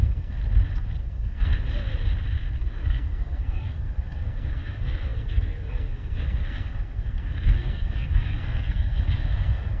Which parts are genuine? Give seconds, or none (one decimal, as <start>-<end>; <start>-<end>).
0.4-1.0; 1.5-2.6